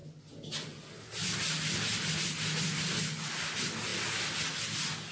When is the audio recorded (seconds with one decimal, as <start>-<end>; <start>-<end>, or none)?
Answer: 0.0-5.1